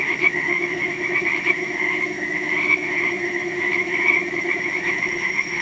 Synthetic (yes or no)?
yes